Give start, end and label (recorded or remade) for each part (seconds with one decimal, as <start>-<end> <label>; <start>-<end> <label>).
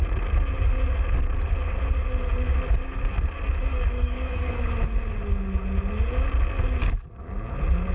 0.0-3.7 recorded; 3.7-4.7 remade; 4.7-7.9 recorded